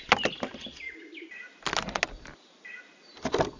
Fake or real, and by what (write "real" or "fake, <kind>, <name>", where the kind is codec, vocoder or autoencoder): real